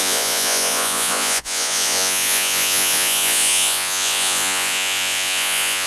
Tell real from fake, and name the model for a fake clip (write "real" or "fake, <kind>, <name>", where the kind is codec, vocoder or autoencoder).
fake, vocoder, Vocos